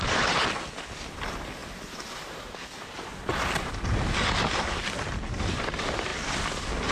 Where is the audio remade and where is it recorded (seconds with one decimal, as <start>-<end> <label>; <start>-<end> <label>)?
0.0-6.9 recorded